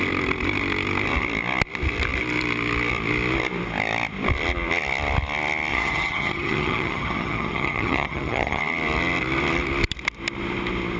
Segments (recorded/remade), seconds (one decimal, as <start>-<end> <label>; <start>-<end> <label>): 0.0-5.7 recorded; 5.7-8.6 remade; 8.6-11.0 recorded